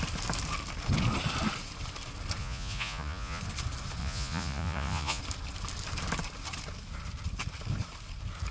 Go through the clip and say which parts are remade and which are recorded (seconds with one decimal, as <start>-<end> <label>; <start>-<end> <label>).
0.0-2.4 recorded; 2.4-3.4 remade; 3.4-4.0 recorded; 4.0-5.2 remade; 5.2-8.5 recorded